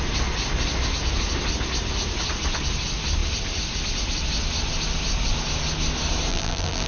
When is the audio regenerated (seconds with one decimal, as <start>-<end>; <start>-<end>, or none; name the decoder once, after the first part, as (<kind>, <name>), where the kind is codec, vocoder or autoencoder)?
6.3-6.9 (vocoder, BigVGAN v2)